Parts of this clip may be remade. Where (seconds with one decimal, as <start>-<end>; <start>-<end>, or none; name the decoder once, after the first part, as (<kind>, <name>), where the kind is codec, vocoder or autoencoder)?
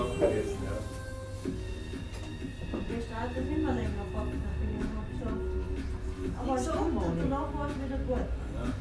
none